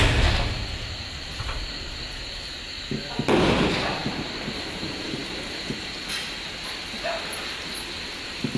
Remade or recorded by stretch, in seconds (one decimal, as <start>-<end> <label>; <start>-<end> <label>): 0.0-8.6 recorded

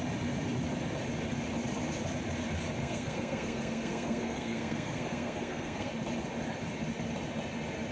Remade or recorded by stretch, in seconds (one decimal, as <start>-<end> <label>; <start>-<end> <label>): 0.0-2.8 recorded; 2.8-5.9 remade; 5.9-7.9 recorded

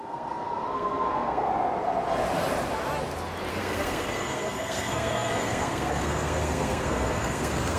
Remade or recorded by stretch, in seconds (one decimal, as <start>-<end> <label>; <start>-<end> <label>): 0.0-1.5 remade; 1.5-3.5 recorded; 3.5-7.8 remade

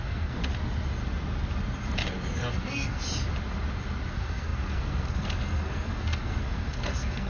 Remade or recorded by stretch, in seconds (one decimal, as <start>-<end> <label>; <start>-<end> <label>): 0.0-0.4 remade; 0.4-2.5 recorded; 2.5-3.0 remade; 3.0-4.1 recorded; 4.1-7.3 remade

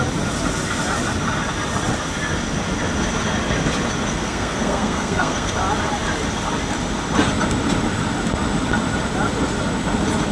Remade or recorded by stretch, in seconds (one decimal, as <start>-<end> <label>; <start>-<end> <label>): 0.0-4.1 recorded; 4.1-5.5 remade; 5.5-10.3 recorded

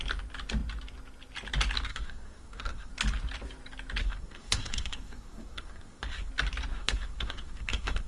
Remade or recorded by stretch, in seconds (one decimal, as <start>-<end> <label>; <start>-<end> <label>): 0.0-1.9 recorded; 1.9-2.9 remade; 2.9-4.0 recorded; 4.0-6.3 remade; 6.3-6.7 recorded; 6.7-8.1 remade

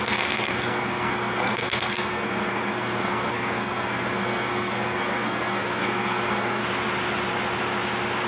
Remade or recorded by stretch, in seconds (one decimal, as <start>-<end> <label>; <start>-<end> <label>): 0.0-6.6 remade; 6.6-8.3 recorded

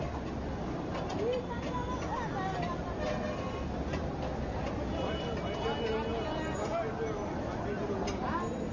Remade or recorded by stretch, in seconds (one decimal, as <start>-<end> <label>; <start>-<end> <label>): 0.0-8.7 recorded